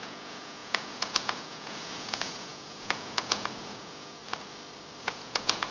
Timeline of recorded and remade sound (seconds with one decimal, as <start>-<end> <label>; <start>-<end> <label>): 0.0-4.2 remade; 4.2-5.0 recorded; 5.0-5.7 remade